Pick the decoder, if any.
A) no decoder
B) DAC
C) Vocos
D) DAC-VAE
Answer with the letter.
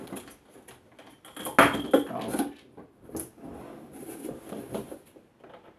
A